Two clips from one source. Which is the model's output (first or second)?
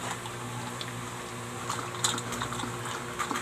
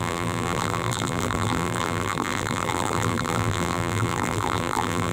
second